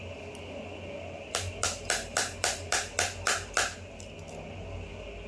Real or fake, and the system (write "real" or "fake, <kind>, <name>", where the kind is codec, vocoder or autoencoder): real